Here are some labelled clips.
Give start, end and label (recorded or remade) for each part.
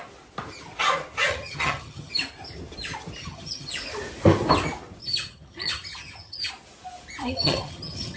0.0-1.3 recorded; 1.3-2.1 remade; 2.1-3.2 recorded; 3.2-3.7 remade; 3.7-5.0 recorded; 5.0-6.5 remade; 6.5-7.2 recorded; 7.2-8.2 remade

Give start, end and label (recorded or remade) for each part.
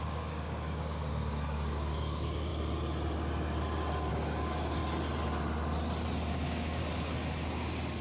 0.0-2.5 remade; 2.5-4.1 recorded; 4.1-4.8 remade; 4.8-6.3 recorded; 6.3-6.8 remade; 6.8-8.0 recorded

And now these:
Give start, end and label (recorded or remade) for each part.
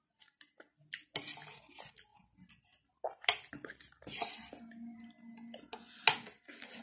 0.0-6.8 recorded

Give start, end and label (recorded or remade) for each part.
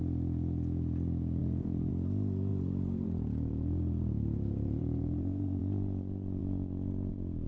0.0-1.4 recorded; 1.4-1.9 remade; 1.9-2.5 recorded; 2.5-5.6 remade; 5.6-7.5 recorded